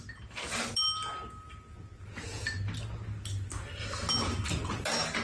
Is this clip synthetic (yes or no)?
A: no